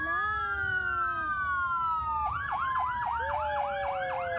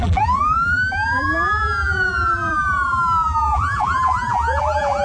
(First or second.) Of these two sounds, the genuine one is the first